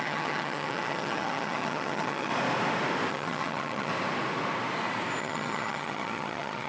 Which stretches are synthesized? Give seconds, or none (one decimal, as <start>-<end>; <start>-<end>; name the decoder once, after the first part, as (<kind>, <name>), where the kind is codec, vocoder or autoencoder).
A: 0.0-2.3 (vocoder, HiFi-GAN); 3.1-3.9; 5.2-6.7